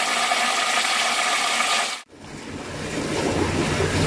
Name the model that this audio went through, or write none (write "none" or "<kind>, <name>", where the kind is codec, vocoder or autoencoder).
none